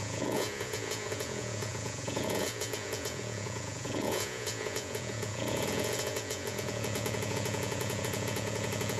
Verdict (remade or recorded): remade